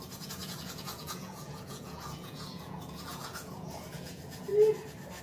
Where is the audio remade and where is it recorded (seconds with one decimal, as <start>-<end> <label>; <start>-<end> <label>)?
0.0-4.5 remade; 4.5-5.2 recorded